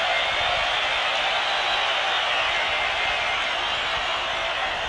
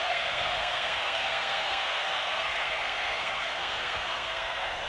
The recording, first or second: first